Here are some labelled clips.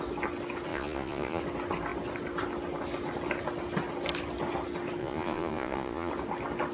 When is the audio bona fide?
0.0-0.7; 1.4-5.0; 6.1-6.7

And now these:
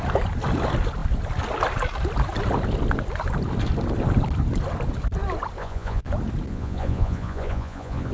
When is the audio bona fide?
0.0-5.6; 6.1-6.5

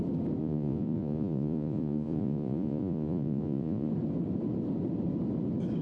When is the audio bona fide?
0.0-0.4; 3.9-5.8

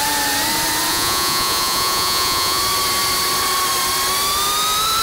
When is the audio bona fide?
0.0-0.9; 2.6-5.0

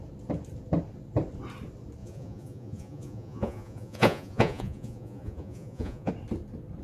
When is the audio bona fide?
0.0-2.0; 6.1-6.8

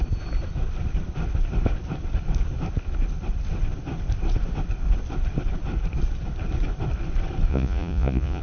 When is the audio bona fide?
0.0-7.5

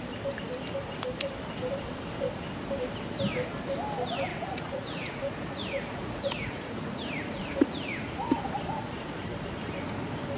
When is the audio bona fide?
0.0-4.3; 8.4-10.4

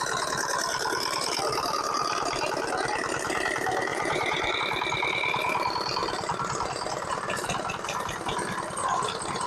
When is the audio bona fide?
0.0-3.9; 4.6-9.5